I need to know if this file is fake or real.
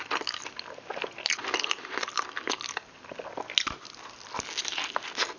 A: real